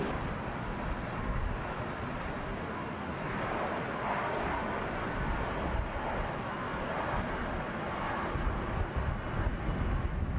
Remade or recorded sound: recorded